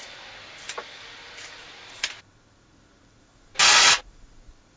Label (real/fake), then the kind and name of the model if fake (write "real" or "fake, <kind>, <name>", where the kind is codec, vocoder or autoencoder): real